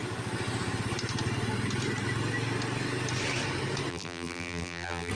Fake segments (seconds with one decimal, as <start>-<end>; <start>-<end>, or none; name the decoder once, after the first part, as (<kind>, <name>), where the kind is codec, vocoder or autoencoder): 3.9-5.1 (vocoder, BigVGAN v2)